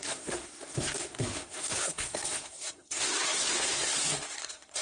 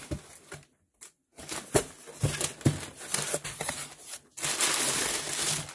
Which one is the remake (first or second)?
first